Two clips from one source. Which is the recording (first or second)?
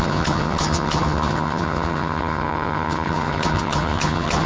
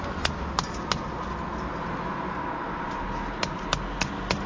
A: second